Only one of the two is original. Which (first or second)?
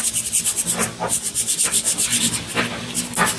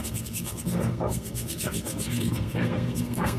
first